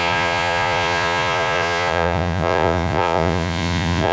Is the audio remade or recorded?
remade